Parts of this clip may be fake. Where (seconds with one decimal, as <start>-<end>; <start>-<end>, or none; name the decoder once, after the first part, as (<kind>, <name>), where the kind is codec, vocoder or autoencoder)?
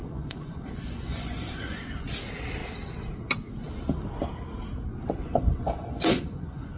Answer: 0.0-2.1 (vocoder, Vocos); 5.2-6.8